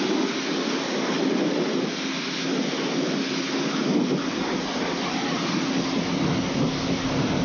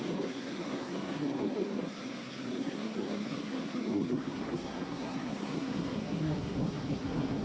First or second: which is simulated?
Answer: second